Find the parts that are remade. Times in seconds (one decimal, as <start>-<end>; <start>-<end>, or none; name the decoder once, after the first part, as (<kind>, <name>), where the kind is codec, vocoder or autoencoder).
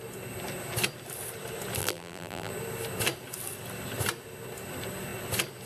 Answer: 1.8-2.5 (vocoder, BigVGAN v2)